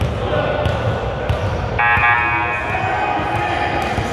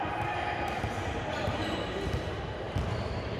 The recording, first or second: first